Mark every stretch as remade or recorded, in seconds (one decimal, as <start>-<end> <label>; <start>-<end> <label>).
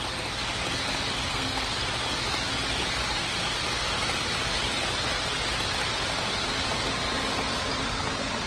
0.0-1.3 recorded; 1.3-1.8 remade; 1.8-8.5 recorded